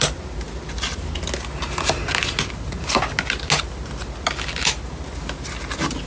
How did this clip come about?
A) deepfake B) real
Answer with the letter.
B